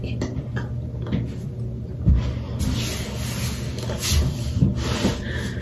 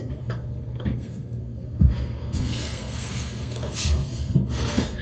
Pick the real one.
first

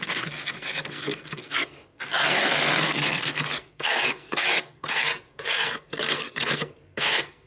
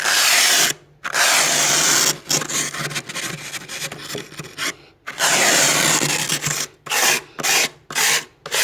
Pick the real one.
second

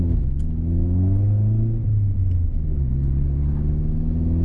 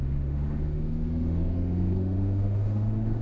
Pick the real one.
first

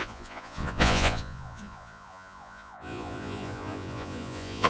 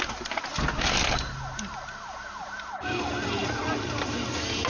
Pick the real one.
second